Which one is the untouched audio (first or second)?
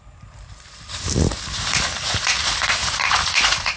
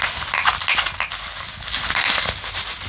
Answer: second